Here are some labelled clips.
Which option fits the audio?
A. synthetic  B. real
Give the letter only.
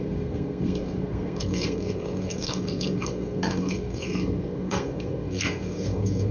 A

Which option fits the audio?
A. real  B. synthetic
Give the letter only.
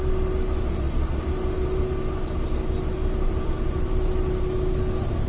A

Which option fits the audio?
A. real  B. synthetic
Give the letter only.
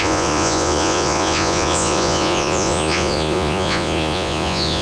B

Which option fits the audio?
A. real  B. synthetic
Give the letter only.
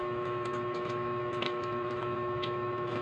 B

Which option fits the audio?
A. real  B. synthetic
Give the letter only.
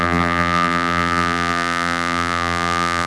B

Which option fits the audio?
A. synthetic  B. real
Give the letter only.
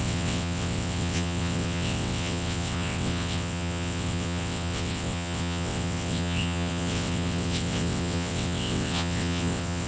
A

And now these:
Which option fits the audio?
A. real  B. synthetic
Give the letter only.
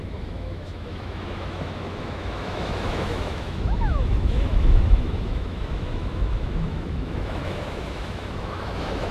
B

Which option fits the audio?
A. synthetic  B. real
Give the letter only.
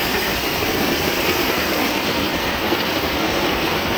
A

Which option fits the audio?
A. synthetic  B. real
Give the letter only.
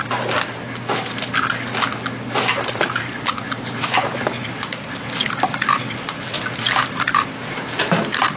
B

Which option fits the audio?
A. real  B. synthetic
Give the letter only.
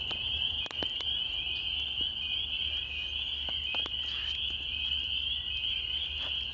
A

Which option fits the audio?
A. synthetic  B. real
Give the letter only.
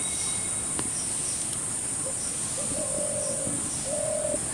B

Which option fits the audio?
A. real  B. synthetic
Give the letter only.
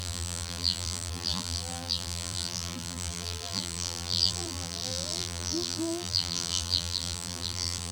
B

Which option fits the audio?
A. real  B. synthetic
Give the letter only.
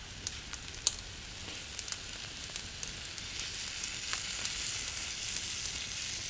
A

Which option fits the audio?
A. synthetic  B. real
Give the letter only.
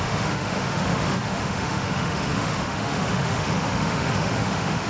A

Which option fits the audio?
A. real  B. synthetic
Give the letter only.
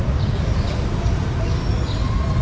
A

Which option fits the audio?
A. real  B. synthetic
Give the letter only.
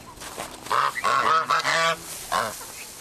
A